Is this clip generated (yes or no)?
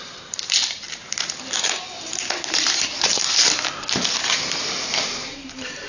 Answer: yes